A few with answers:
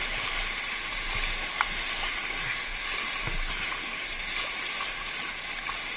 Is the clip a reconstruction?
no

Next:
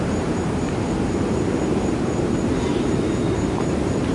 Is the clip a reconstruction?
yes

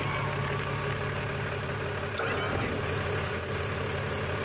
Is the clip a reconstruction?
no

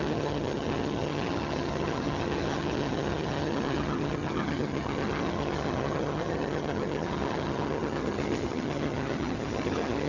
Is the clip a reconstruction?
yes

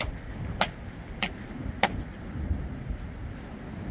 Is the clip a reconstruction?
no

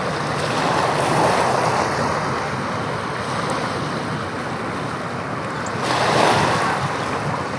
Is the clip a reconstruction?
no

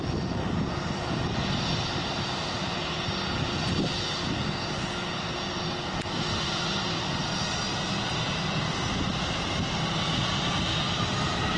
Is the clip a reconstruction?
no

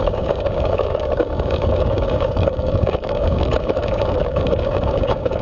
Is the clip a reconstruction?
yes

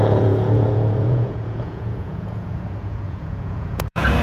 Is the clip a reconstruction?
yes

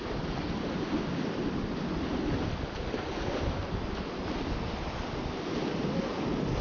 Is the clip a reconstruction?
no